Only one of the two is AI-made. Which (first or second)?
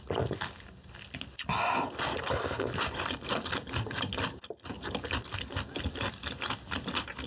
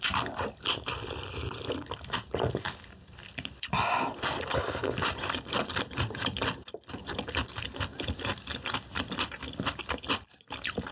second